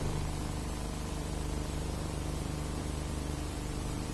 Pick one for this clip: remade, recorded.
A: remade